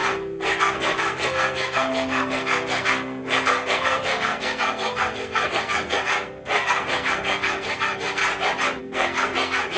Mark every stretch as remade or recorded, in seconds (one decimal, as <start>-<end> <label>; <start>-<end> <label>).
0.0-8.2 remade; 8.2-8.8 recorded; 8.8-9.8 remade